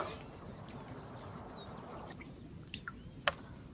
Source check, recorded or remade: recorded